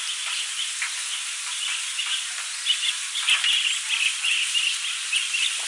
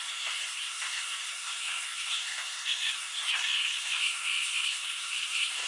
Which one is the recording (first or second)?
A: first